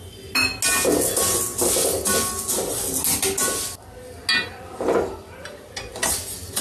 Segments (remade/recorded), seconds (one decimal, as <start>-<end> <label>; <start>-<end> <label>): 0.0-6.6 recorded